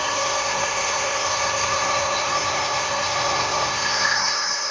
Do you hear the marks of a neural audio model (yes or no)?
yes